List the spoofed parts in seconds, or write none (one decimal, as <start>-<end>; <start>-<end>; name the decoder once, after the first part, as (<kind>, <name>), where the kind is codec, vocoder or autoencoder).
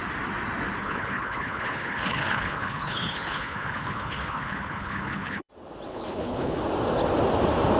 0.8-5.5 (codec, HILCodec); 5.9-6.6